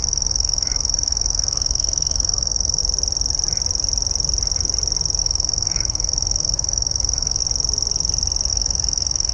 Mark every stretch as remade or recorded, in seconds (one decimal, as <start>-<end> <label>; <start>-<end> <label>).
0.0-2.8 remade; 2.8-5.2 recorded; 5.2-7.4 remade; 7.4-8.5 recorded; 8.5-9.3 remade